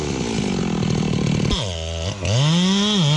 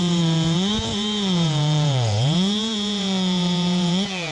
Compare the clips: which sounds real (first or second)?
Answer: first